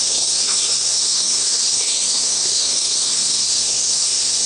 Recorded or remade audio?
remade